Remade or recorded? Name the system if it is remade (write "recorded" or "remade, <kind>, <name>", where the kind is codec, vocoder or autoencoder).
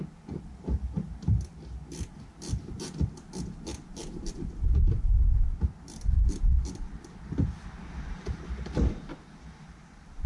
recorded